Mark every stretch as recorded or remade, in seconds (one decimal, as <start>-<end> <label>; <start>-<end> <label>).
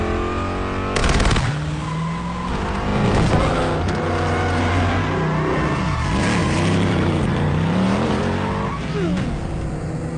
0.0-6.4 recorded; 6.4-8.2 remade; 8.2-10.2 recorded